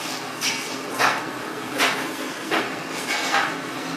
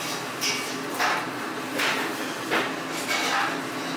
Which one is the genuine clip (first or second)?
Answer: second